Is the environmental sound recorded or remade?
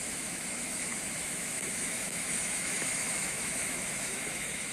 remade